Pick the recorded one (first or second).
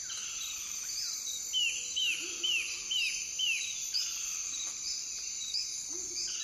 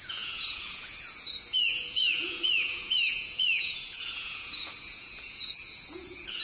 first